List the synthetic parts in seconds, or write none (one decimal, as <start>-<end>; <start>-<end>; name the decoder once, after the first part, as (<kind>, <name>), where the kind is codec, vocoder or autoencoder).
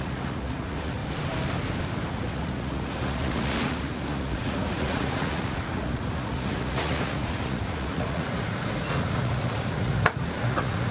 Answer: 0.0-1.0 (vocoder, Vocos); 2.1-10.9